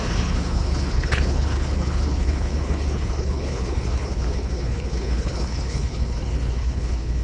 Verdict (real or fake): fake